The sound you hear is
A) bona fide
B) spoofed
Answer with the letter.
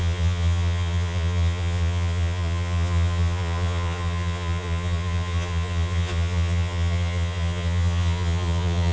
B